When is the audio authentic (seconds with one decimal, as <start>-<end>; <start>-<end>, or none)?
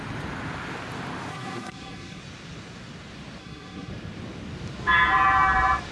0.0-1.3; 2.2-3.4; 3.9-5.9